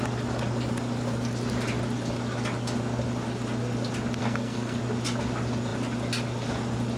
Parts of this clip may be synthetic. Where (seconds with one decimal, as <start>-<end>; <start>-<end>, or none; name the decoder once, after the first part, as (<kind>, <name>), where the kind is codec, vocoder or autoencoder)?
4.2-4.8 (codec, SNAC)